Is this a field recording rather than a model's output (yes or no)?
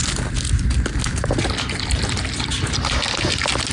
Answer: yes